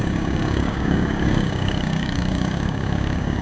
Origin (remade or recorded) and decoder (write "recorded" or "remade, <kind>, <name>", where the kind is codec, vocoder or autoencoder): remade, codec, DAC